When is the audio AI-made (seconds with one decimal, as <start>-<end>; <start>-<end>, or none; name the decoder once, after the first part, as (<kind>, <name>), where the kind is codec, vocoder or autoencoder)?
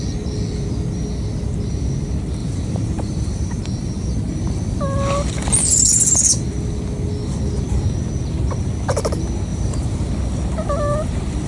2.4-3.6 (vocoder, BigVGAN v2); 9.5-10.1